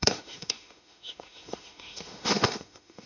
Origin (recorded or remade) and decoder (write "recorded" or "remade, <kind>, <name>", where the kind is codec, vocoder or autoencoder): remade, autoencoder, DAC-VAE